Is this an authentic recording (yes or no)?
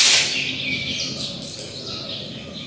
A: yes